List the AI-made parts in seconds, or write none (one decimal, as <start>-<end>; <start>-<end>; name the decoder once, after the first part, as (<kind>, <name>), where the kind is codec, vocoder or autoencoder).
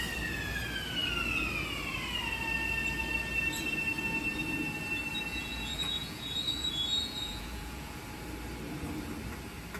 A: 5.3-8.0 (vocoder, Vocos)